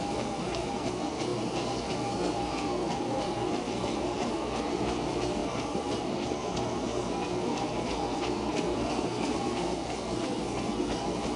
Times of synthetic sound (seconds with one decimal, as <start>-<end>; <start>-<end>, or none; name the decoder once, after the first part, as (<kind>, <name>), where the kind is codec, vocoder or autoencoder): 0.0-11.4 (codec, SNAC)